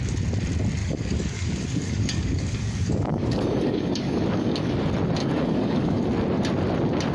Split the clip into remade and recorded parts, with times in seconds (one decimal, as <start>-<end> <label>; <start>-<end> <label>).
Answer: 0.0-0.8 recorded; 0.8-4.8 remade; 4.8-5.2 recorded; 5.2-6.0 remade; 6.0-7.1 recorded